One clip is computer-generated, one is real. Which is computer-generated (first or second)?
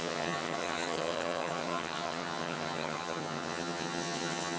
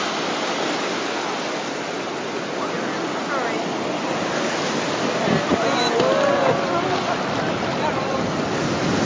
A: first